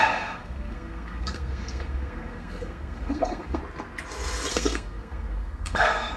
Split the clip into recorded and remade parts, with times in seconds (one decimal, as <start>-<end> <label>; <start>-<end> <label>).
0.0-3.6 remade; 3.6-4.5 recorded; 4.5-6.2 remade